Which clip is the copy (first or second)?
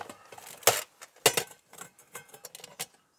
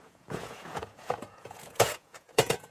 second